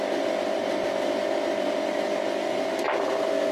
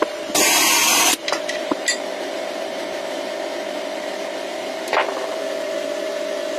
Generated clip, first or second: second